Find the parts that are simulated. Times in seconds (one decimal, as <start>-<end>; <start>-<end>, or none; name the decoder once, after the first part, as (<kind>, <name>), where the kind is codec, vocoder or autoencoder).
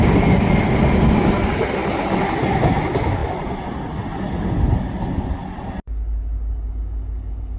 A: none